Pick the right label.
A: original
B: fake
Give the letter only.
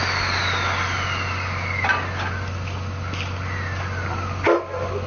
A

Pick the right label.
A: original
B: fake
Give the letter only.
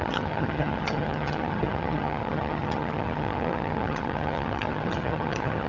B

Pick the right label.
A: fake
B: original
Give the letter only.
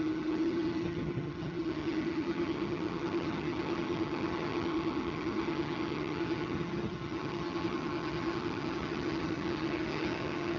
A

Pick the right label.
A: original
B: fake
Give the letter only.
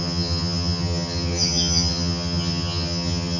B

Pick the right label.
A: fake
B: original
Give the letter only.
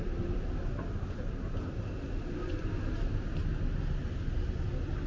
B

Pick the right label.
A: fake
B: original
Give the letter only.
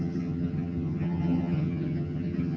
A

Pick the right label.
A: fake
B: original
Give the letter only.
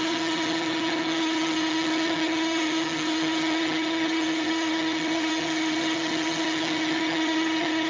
A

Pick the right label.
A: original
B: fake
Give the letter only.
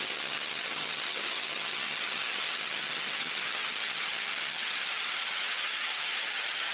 B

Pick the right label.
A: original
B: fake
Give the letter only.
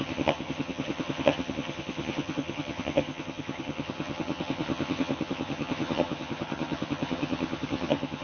B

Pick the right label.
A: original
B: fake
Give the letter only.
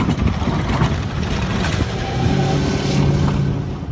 A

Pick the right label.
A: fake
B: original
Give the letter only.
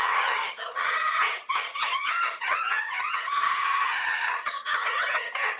A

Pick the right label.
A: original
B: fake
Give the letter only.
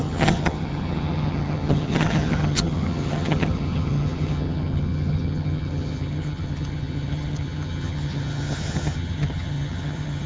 B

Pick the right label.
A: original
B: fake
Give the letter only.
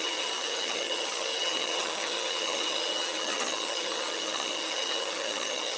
B